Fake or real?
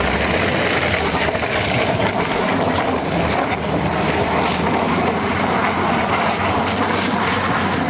real